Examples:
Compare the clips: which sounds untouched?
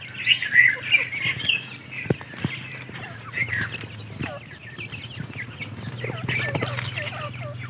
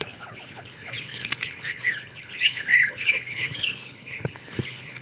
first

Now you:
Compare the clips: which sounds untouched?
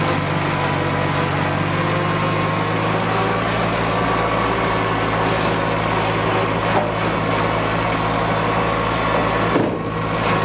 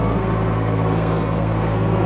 first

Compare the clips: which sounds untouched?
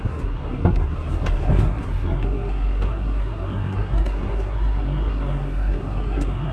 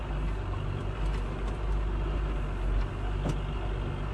second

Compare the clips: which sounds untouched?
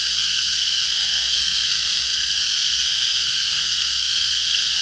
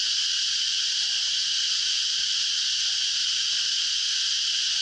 second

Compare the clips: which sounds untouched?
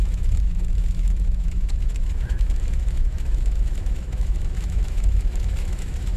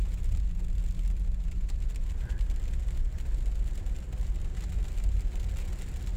second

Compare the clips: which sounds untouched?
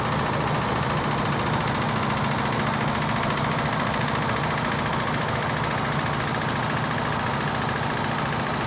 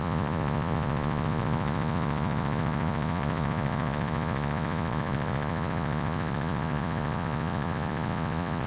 first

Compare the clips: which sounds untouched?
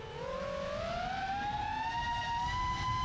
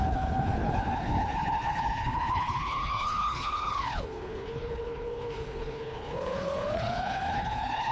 first